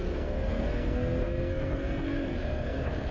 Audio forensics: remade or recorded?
remade